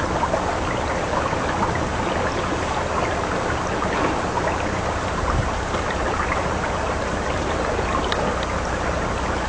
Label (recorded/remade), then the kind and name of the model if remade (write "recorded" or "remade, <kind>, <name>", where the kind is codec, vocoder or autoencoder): recorded